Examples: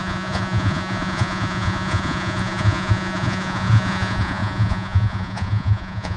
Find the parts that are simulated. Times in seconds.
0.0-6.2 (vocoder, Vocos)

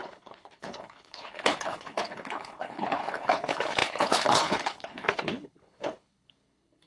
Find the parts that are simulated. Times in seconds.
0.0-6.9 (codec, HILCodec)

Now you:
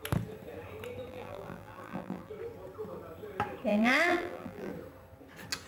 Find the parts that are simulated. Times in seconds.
1.1-2.3 (vocoder, BigVGAN v2); 3.7-4.7

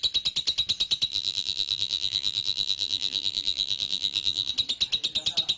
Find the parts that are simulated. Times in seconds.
1.1-4.5 (vocoder, BigVGAN v2)

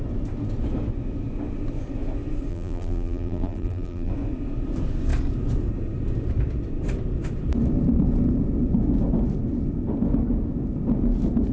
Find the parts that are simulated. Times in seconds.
2.5-4.1 (vocoder, BigVGAN v2)